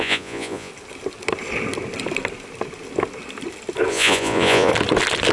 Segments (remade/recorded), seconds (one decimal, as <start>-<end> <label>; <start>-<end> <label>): 0.0-0.7 remade; 0.7-3.9 recorded; 3.9-4.7 remade; 4.7-5.3 recorded